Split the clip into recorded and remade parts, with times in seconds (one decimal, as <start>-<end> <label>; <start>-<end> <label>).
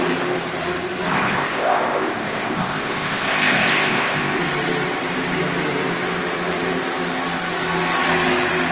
0.0-1.1 recorded; 1.1-4.4 remade; 4.4-8.7 recorded